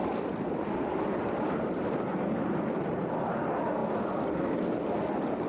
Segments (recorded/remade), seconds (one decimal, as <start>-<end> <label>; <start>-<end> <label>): 0.0-5.5 recorded